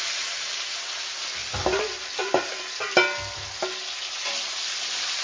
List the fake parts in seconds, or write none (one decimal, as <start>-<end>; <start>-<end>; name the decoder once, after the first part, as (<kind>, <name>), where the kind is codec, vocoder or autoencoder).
none

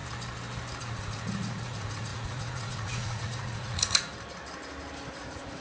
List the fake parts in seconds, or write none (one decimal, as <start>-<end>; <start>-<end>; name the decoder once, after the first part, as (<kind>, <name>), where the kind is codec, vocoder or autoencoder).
0.8-4.1 (vocoder, Vocos); 5.1-5.6

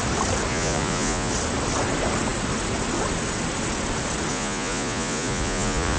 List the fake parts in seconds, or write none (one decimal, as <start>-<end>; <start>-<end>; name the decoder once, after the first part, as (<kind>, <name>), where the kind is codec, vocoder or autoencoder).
0.5-1.3 (vocoder, Vocos); 4.3-6.0

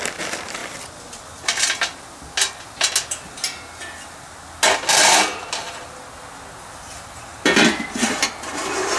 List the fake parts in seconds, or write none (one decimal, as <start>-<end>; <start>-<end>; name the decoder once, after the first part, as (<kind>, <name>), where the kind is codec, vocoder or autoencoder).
none

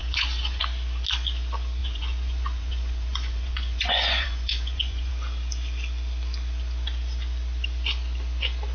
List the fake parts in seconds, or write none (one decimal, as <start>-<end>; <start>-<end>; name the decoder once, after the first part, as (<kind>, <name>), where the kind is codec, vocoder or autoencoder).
0.0-0.6 (vocoder, Vocos); 1.8-5.1

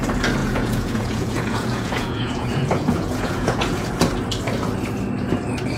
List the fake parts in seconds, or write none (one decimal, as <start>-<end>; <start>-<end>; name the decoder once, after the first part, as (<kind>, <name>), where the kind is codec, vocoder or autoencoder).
0.4-3.9 (vocoder, Vocos)

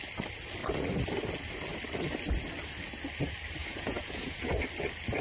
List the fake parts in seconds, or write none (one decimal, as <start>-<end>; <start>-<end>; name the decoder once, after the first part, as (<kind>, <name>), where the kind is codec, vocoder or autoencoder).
3.6-4.5 (vocoder, Vocos)

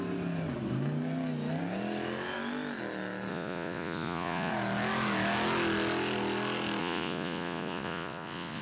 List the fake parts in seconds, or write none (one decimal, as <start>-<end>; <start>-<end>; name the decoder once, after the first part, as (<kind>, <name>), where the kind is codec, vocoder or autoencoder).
3.3-4.5 (vocoder, Vocos); 6.8-8.6